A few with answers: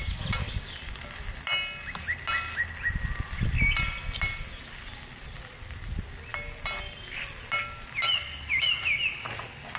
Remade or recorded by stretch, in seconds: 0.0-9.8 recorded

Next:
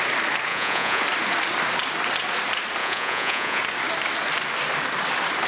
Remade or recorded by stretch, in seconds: 0.0-0.5 recorded; 0.5-1.0 remade; 1.0-2.8 recorded; 2.8-3.6 remade; 3.6-5.5 recorded

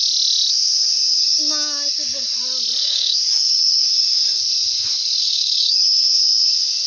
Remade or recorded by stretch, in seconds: 0.0-1.2 recorded; 1.2-2.2 remade; 2.2-2.8 recorded; 2.8-4.4 remade; 4.4-5.2 recorded; 5.2-6.1 remade; 6.1-6.9 recorded

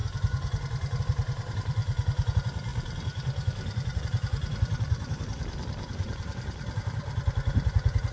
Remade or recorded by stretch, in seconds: 0.0-1.0 recorded; 1.0-1.8 remade; 1.8-2.3 recorded; 2.3-8.1 remade

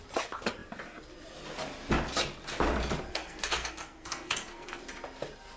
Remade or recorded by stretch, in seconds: 0.0-3.1 recorded; 3.1-4.8 remade; 4.8-5.6 recorded

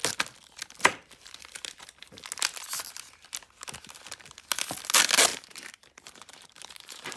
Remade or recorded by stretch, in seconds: 0.0-5.3 recorded; 5.3-7.2 remade